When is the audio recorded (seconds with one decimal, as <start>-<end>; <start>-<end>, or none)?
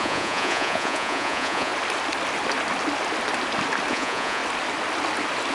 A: 1.7-3.9; 4.4-5.5